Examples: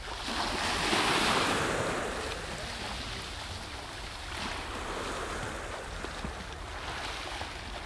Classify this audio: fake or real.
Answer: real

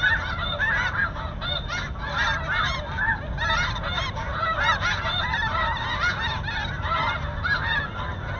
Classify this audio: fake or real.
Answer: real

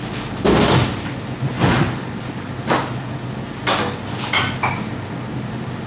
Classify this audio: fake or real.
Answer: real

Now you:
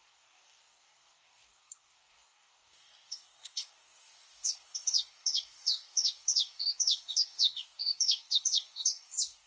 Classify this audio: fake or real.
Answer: fake